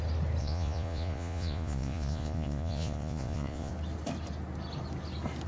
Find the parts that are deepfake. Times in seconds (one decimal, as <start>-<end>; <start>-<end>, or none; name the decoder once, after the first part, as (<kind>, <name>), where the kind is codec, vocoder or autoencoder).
0.4-3.7 (vocoder, Vocos)